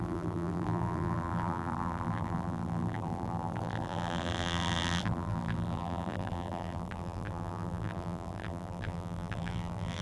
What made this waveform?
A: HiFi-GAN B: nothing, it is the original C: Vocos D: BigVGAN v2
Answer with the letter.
D